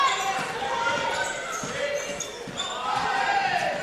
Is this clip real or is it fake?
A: fake